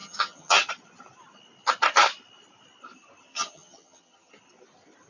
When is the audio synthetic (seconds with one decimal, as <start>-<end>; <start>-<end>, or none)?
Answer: 0.0-0.7; 3.3-4.3